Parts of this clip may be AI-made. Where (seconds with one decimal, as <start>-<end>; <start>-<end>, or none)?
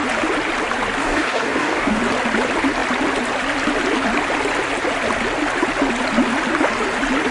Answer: 1.0-2.0